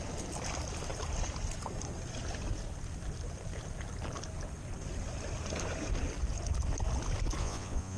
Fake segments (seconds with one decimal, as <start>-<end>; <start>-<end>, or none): 7.4-8.0